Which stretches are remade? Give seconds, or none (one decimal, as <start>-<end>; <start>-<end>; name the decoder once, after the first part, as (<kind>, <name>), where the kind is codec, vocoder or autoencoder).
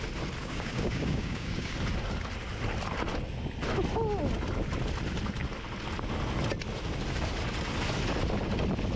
0.4-1.7 (codec, DAC)